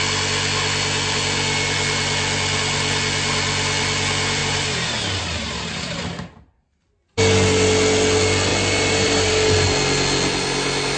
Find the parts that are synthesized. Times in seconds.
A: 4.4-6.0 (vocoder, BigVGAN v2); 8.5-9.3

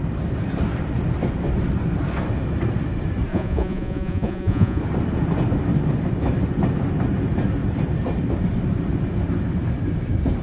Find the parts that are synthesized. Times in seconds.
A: 3.3-4.8 (vocoder, Vocos)

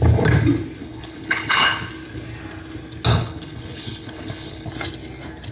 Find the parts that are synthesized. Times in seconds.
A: 0.8-1.9 (codec, HILCodec); 3.1-4.7

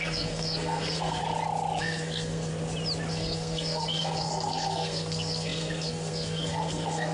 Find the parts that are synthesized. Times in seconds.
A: 0.0-1.2 (codec, SNAC); 1.8-2.5; 3.1-7.1

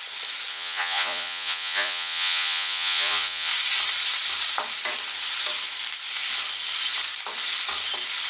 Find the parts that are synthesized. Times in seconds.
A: 0.5-3.5 (vocoder, Vocos)

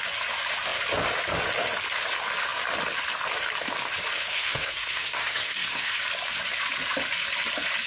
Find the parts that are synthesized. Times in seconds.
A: 4.3-6.0 (codec, SNAC)

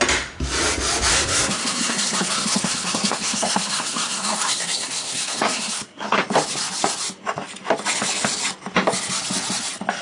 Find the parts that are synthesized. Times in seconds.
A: 1.1-6.2 (codec, SNAC)